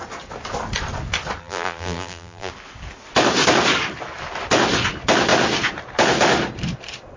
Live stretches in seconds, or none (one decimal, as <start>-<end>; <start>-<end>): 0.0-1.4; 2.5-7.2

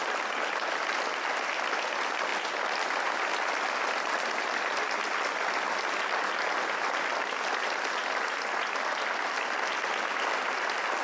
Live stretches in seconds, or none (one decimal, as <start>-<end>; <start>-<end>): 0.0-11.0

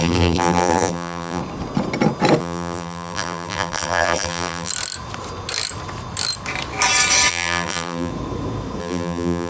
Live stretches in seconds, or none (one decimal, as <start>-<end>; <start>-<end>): 1.4-2.4; 4.7-7.3; 8.1-8.8

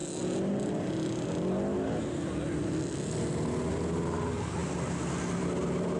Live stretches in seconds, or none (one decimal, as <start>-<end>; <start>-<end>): 0.0-6.0

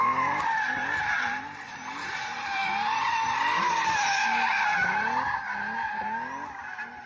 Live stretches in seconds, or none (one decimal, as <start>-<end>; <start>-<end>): 2.6-7.1

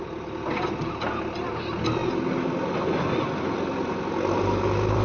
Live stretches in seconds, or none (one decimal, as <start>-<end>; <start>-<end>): 2.0-4.6

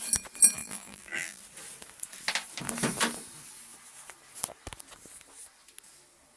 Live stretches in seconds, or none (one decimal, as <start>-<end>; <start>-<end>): 0.0-0.6; 1.4-6.4

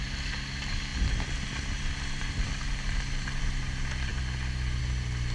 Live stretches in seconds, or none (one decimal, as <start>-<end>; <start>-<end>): 0.0-5.3